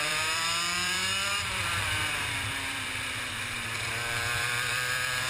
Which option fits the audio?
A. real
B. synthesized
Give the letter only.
B